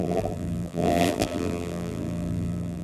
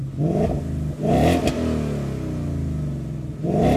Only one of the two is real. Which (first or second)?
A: second